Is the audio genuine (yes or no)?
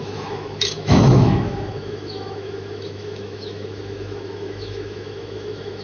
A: no